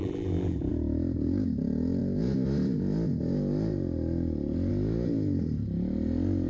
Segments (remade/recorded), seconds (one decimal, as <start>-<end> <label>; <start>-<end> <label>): 0.0-0.7 remade; 0.7-6.5 recorded